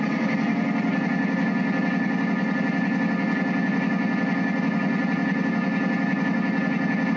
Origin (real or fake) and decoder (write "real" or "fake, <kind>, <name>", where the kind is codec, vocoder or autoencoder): real